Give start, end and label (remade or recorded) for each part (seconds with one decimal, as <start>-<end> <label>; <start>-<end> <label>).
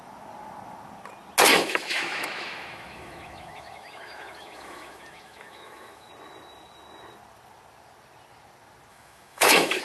0.0-1.5 recorded; 1.5-6.1 remade; 6.1-8.9 recorded; 8.9-9.8 remade